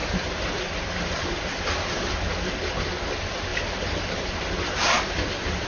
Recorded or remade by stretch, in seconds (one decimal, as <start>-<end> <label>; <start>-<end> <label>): 0.0-3.5 recorded; 3.5-5.7 remade